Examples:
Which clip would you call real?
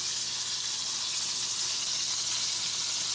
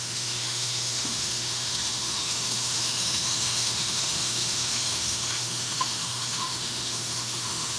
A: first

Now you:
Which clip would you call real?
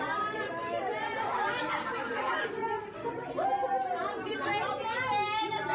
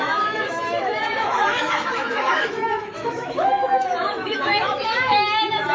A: first